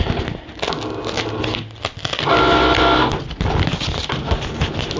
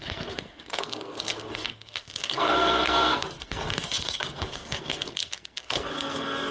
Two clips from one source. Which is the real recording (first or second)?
first